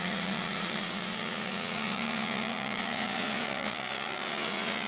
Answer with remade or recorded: remade